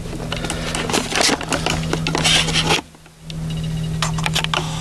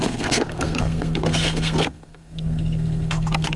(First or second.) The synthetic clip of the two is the second